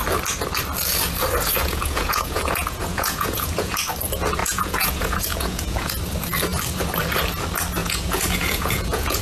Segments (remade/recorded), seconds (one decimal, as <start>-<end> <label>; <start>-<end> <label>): 0.0-1.6 recorded; 1.6-3.8 remade; 3.8-4.4 recorded; 4.4-5.9 remade; 5.9-7.8 recorded; 7.8-9.2 remade